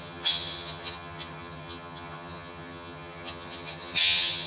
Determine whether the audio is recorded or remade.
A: remade